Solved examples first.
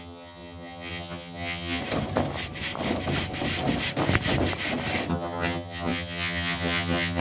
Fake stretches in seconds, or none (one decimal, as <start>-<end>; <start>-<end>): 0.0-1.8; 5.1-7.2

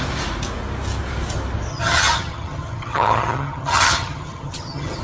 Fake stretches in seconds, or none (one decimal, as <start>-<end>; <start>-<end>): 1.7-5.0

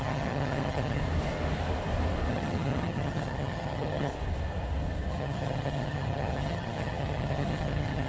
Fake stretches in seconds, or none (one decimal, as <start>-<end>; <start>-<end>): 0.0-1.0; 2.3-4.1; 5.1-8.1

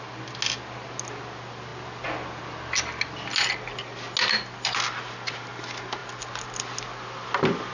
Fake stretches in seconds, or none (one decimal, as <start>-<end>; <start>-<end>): none

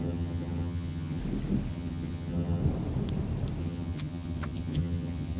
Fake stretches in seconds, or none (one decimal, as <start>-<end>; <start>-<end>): 0.0-1.2; 1.7-2.6; 3.6-5.4

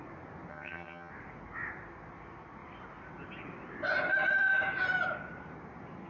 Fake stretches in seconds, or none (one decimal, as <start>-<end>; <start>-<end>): 0.5-1.1